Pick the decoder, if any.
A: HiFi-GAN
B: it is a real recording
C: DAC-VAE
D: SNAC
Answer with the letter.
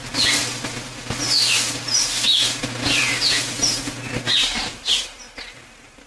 B